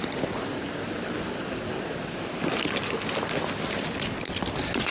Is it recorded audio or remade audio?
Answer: recorded